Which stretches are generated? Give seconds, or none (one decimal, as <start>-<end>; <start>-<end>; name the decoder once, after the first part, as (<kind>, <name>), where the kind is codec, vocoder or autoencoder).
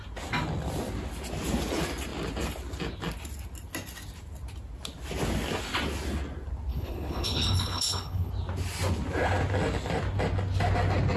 6.7-8.3 (codec, HILCodec)